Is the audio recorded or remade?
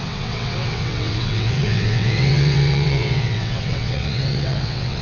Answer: remade